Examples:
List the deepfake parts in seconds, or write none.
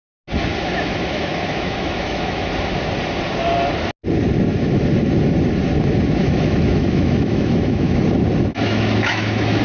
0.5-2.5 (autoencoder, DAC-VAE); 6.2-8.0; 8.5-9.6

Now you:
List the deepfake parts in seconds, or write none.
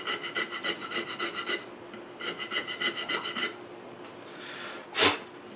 none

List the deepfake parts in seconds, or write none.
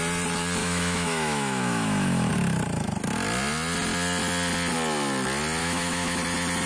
0.6-2.3 (autoencoder, DAC-VAE); 5.6-6.2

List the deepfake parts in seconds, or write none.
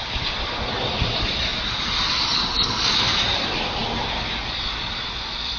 none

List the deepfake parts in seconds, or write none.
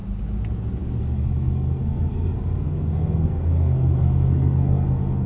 1.0-5.3 (codec, SNAC)